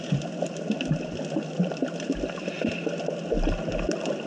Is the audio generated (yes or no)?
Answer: no